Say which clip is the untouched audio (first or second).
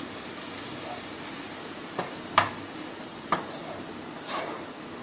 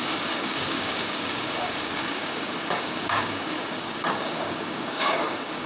first